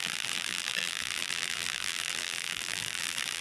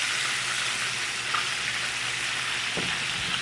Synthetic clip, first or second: first